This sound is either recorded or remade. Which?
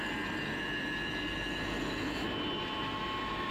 recorded